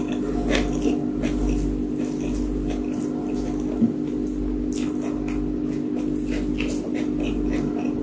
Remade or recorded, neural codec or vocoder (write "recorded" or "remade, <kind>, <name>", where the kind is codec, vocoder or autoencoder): recorded